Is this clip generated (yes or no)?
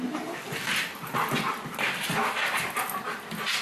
no